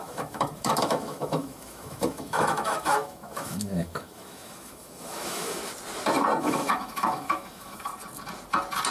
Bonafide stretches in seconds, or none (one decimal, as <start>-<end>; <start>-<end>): 5.6-6.4; 7.9-8.9